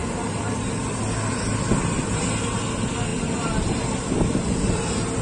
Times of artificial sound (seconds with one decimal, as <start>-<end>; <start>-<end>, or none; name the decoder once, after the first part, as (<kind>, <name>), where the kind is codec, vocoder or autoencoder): none